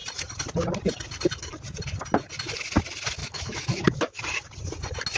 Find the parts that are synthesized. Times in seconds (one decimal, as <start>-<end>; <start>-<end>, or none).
3.2-4.2